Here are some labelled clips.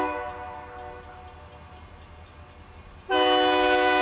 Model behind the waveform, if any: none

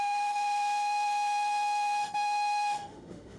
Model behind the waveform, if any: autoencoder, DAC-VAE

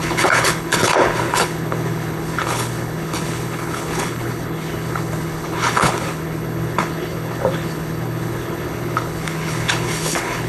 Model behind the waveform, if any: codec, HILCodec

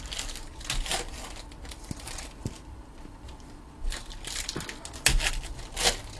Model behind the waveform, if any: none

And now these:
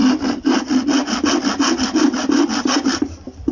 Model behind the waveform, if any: none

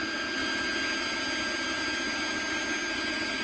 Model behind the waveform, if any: none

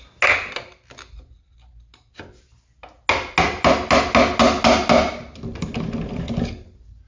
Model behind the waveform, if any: none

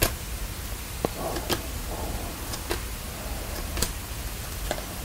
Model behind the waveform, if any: none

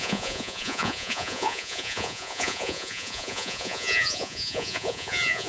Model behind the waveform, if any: vocoder, Vocos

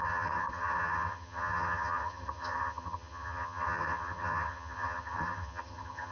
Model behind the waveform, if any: vocoder, HiFi-GAN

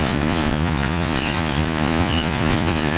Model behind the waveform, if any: vocoder, Vocos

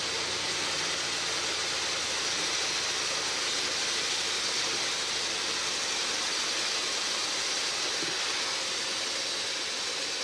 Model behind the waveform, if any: none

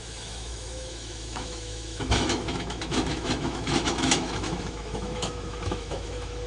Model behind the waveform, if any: autoencoder, DAC-VAE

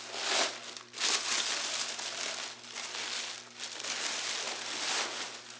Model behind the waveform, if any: none